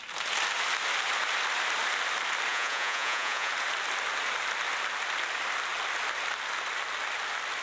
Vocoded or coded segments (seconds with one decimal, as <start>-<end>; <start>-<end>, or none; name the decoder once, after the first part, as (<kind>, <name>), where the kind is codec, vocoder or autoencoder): 2.5-3.5 (vocoder, Vocos)